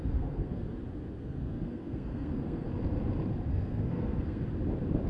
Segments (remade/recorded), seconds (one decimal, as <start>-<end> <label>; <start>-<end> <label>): 0.0-0.6 remade; 0.6-1.2 recorded; 1.2-2.7 remade; 2.7-3.5 recorded; 3.5-4.4 remade; 4.4-5.1 recorded